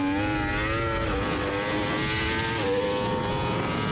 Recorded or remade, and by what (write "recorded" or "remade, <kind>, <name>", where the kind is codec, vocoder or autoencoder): recorded